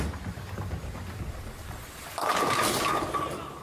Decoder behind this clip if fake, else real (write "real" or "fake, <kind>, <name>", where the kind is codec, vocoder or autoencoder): real